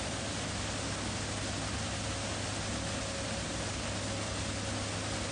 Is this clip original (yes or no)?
yes